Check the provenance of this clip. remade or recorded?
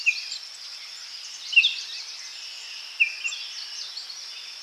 recorded